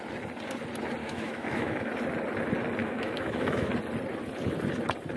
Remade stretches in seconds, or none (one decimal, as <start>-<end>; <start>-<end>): 1.0-1.9; 2.8-3.7